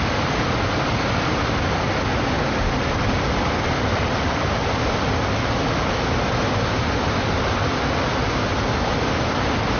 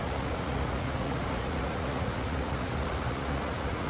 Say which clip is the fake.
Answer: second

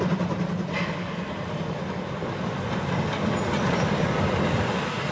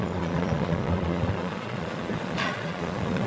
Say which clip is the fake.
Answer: second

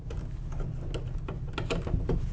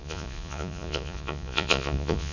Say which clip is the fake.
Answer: second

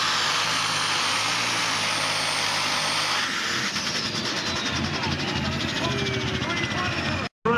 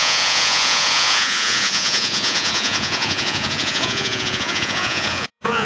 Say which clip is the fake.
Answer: second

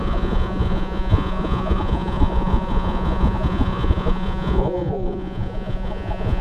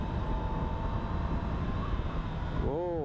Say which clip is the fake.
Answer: first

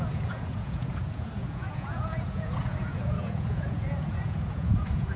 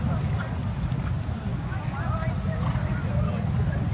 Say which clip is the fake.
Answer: first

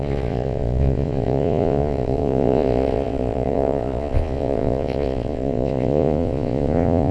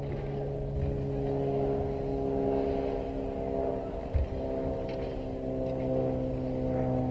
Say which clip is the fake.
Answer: first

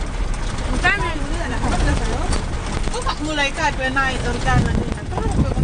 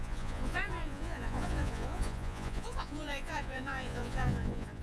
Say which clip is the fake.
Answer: second